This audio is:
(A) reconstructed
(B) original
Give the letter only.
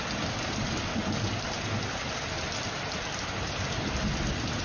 B